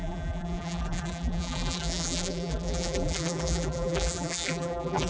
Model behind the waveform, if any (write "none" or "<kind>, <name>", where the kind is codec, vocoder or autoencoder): vocoder, BigVGAN v2